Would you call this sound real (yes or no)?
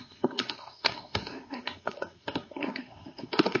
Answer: no